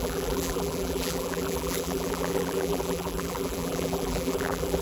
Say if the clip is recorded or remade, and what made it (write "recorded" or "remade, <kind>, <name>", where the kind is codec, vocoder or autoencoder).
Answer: remade, vocoder, BigVGAN v2